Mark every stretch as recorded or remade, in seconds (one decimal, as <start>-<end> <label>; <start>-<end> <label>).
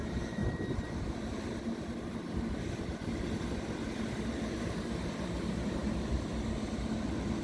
0.0-0.4 remade; 0.4-4.5 recorded; 4.5-6.3 remade; 6.3-7.4 recorded